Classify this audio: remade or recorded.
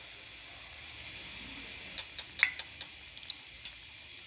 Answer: recorded